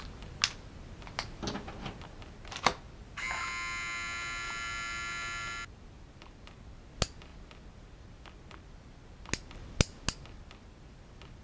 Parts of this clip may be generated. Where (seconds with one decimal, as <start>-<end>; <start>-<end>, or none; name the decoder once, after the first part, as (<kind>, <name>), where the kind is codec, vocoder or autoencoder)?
none